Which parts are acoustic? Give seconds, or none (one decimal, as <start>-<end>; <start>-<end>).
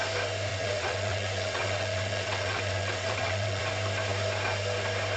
0.0-0.5; 3.6-5.2